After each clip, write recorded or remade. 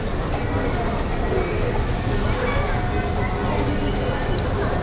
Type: recorded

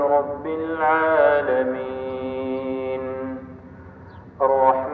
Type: recorded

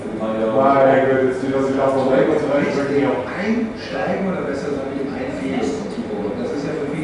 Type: recorded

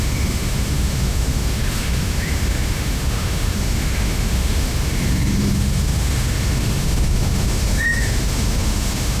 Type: remade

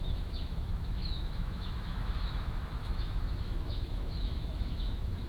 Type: remade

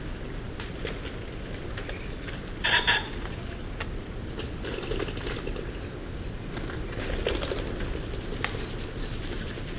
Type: recorded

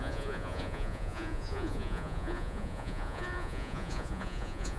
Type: remade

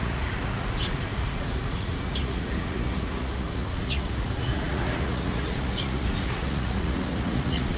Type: remade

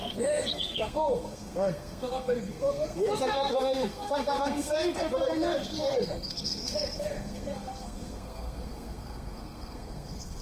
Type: remade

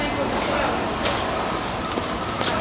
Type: recorded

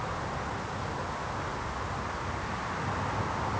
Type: recorded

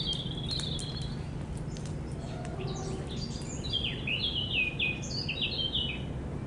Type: recorded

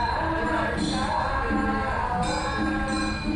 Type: recorded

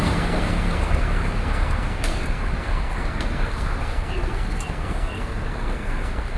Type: remade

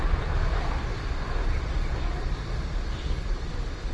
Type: remade